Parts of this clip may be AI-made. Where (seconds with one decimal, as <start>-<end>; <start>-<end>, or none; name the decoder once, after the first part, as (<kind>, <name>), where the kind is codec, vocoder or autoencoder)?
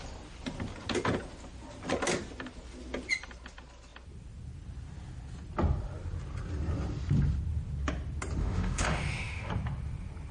8.4-9.5 (autoencoder, DAC-VAE)